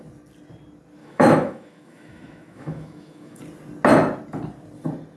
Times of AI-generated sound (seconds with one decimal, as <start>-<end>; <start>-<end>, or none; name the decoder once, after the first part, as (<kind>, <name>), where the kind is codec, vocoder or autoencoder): 1.0-3.4 (autoencoder, DAC-VAE)